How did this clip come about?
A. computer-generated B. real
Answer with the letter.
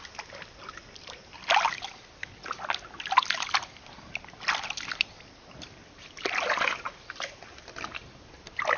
B